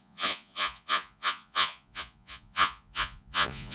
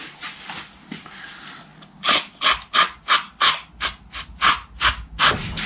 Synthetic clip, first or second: first